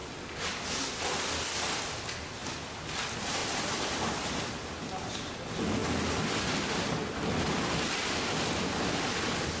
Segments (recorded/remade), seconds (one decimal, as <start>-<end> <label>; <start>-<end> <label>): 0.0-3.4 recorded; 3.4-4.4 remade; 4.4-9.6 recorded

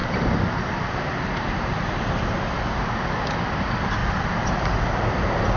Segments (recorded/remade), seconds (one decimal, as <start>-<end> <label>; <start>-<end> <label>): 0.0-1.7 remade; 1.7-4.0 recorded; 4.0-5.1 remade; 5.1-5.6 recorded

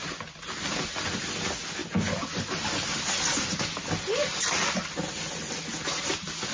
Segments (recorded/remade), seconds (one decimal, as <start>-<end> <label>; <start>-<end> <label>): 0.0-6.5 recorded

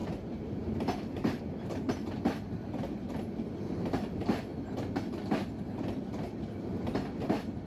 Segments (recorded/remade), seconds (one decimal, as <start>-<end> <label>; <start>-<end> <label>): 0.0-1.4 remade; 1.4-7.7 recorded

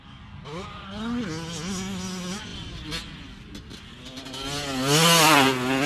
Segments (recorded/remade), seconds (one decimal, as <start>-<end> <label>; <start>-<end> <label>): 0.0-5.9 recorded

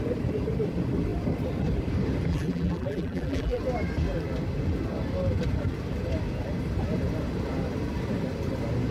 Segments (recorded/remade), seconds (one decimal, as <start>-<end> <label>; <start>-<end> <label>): 0.0-2.3 recorded; 2.3-3.6 remade; 3.6-8.9 recorded